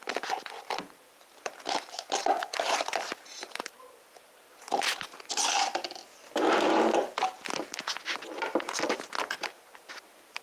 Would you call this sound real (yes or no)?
yes